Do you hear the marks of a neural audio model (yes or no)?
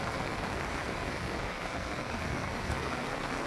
yes